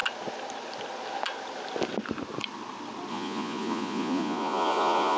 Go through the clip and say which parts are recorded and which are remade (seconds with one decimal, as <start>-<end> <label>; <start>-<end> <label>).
0.0-3.1 recorded; 3.1-5.2 remade